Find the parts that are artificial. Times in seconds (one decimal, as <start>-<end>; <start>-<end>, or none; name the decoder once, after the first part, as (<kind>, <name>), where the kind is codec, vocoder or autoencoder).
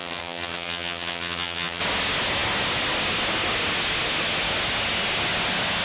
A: 0.0-1.8 (vocoder, HiFi-GAN)